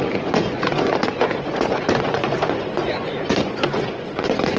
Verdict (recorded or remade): remade